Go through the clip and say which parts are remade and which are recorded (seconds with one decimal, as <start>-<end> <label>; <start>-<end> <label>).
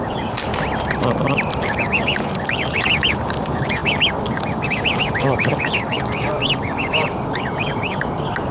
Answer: 0.0-0.5 remade; 0.5-1.6 recorded; 1.6-8.5 remade